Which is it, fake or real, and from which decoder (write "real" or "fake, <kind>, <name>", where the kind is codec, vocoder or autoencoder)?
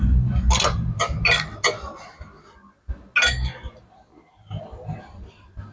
real